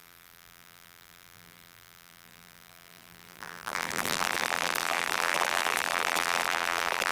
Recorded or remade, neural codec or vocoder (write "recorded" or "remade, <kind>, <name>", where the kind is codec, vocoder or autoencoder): remade, vocoder, BigVGAN v2